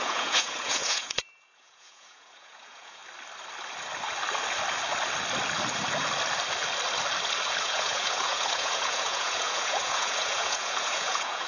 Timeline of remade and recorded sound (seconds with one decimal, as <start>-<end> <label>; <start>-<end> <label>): 0.0-3.0 remade; 3.0-7.6 recorded; 7.6-11.5 remade